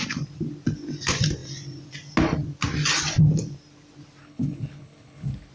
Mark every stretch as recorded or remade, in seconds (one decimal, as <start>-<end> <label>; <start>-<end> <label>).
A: 0.0-4.2 recorded; 4.2-5.5 remade